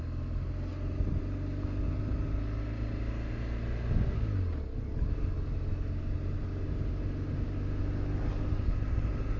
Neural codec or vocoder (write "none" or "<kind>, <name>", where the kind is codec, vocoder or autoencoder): none